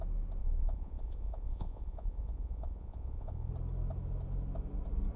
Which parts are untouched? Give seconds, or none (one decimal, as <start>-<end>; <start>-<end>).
0.0-0.4; 3.5-5.2